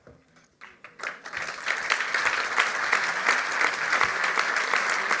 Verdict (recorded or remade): recorded